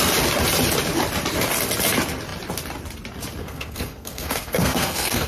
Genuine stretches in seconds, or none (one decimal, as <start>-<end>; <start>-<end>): 0.0-3.4